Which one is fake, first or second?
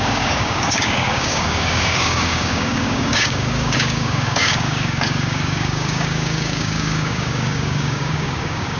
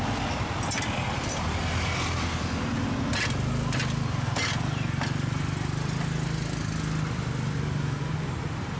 first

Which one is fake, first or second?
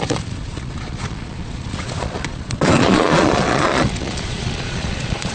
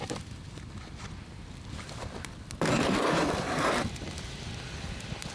first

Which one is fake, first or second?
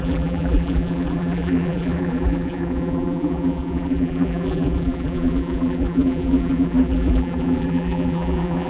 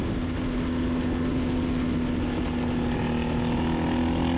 first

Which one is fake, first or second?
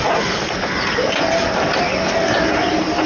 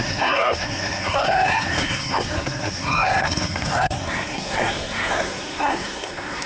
second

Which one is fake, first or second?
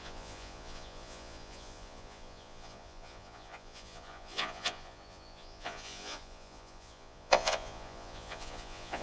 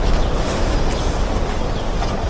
first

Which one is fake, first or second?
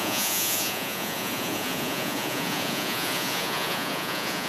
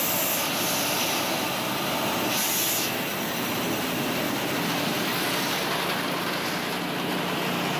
first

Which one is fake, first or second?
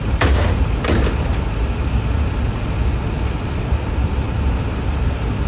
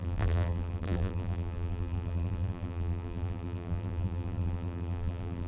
second